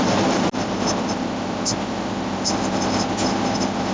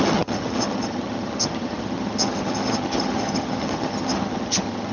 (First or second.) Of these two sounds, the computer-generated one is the second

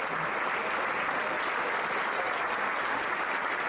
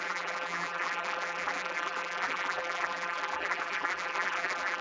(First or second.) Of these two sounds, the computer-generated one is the second